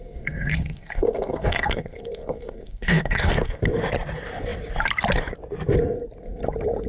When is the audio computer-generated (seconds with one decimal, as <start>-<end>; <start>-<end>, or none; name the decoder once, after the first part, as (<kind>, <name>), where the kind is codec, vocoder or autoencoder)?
0.0-3.6 (codec, SNAC)